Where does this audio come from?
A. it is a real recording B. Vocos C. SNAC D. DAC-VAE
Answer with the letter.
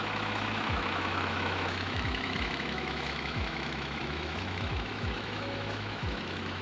D